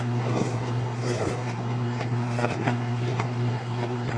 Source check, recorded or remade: remade